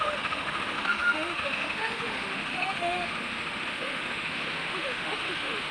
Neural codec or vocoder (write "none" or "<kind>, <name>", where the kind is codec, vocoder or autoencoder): autoencoder, DAC-VAE